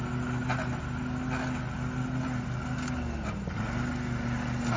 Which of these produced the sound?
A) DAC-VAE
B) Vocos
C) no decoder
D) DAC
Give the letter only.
C